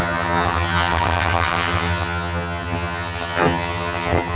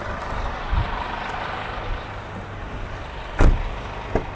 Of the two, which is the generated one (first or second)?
first